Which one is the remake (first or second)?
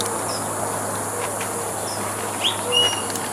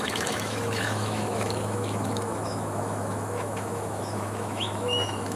second